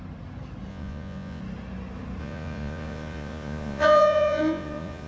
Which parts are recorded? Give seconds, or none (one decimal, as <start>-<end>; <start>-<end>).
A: 0.0-0.7; 1.4-2.2